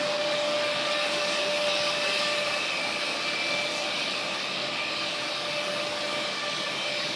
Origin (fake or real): fake